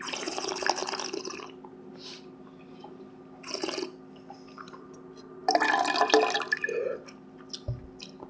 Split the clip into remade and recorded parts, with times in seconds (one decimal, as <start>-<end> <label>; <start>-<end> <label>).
0.0-5.4 remade; 5.4-6.0 recorded; 6.0-8.3 remade